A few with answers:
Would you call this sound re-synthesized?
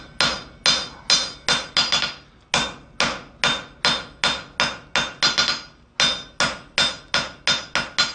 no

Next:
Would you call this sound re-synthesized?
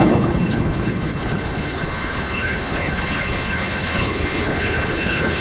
yes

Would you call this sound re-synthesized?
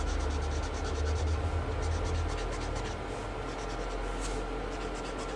no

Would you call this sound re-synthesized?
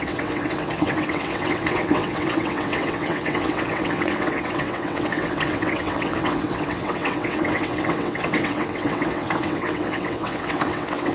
yes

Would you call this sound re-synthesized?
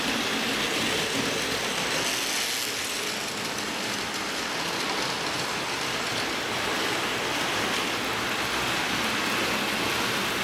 no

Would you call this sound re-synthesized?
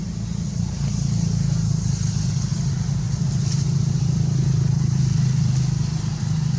yes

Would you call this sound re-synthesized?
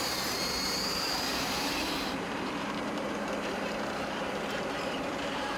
yes